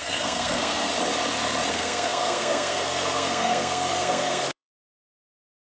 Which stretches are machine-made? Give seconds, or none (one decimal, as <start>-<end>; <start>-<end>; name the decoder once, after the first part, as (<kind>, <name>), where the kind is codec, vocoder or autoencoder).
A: 0.0-0.9 (codec, SNAC); 1.7-5.7